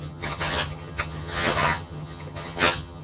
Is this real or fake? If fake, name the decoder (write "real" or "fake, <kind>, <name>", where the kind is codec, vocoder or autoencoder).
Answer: fake, vocoder, HiFi-GAN